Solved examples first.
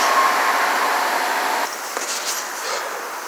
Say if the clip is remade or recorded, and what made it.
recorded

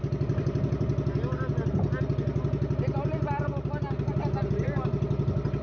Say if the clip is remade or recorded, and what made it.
recorded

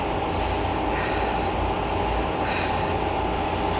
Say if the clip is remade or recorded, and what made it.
recorded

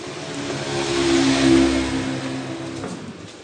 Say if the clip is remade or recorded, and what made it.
recorded